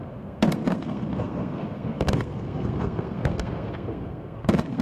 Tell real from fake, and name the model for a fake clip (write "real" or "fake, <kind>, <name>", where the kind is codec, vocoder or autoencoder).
fake, codec, SNAC